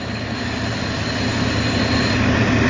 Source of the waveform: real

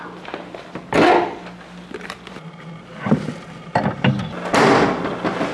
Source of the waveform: real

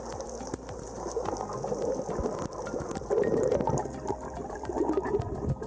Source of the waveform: real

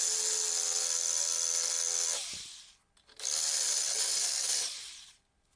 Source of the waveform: real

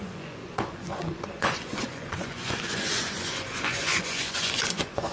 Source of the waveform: fake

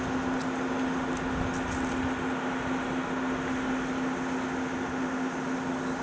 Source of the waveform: real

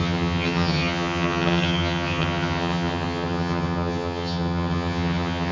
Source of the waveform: fake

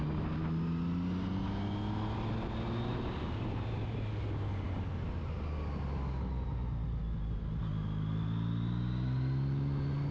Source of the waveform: real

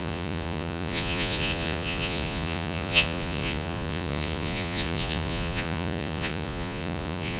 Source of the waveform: fake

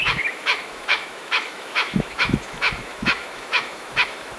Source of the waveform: fake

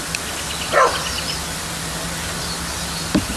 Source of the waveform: real